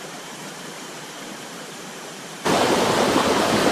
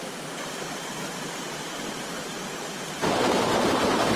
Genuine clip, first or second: second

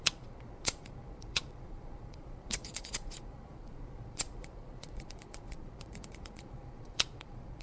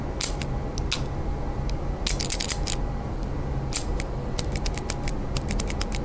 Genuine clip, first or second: second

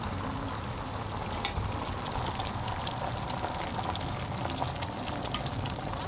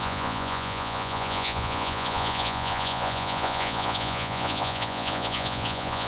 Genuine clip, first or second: first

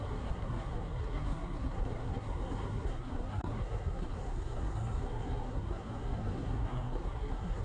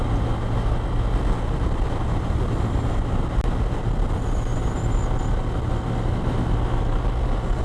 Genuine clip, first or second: second